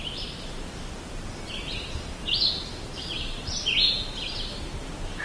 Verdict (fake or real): real